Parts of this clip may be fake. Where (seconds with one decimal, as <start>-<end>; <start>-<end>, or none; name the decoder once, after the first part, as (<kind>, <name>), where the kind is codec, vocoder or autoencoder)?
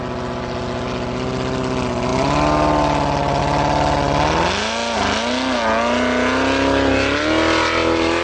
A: none